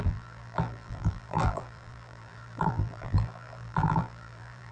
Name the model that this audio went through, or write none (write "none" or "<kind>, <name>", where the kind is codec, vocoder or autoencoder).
vocoder, BigVGAN v2